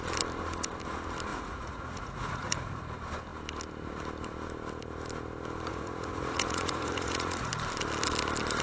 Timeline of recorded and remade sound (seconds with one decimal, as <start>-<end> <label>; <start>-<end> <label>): 0.0-1.3 recorded; 1.3-2.8 remade; 2.8-5.7 recorded; 5.7-7.5 remade; 7.5-8.6 recorded